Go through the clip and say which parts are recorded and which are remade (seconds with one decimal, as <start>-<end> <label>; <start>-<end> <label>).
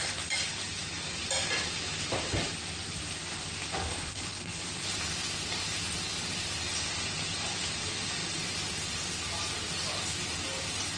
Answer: 0.0-3.9 recorded; 3.9-4.6 remade; 4.6-11.0 recorded